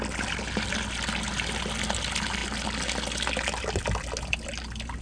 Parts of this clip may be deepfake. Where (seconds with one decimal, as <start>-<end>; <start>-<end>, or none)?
none